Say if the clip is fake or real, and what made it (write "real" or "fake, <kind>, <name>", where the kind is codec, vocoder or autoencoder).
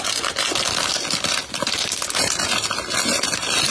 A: real